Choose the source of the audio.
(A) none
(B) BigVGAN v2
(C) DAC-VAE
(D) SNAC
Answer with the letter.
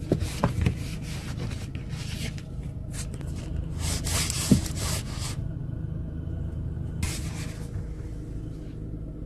A